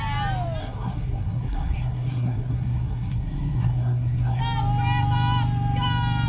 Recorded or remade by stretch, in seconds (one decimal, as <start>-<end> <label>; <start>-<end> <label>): 0.0-0.6 recorded; 0.6-4.4 remade; 4.4-6.3 recorded